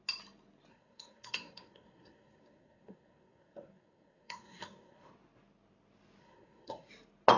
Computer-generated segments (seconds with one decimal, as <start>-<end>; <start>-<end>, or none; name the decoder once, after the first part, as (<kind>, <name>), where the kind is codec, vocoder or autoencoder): 0.7-5.1 (codec, SNAC); 6.2-6.9